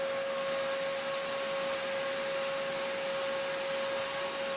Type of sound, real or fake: real